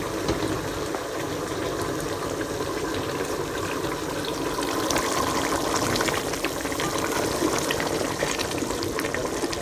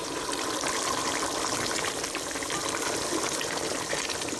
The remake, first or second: second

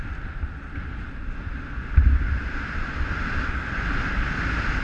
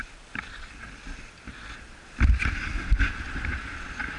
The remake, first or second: second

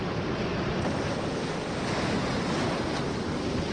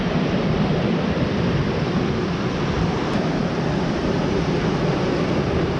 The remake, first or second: second